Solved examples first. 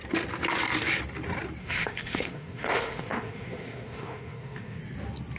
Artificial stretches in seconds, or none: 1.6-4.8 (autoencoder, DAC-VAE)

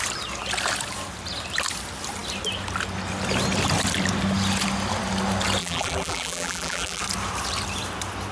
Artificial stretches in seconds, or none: 5.6-7.0 (vocoder, BigVGAN v2)

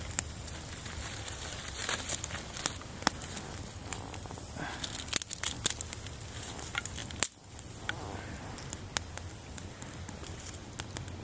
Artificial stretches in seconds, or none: none

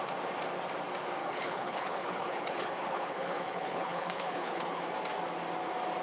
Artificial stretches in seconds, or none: 1.2-4.8 (codec, HILCodec)

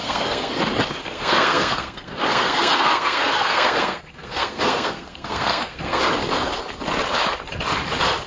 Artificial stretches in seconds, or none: 0.0-0.5 (codec, SNAC); 1.0-6.0

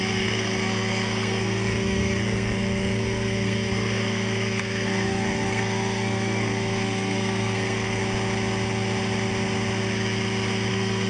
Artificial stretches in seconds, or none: 0.0-8.0 (codec, SNAC); 10.7-11.1

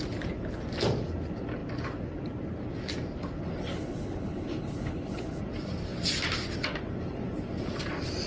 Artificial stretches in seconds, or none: 3.7-5.4 (codec, HILCodec)

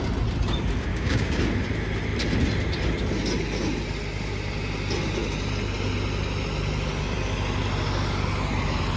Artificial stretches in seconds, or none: 0.9-1.4 (codec, DAC)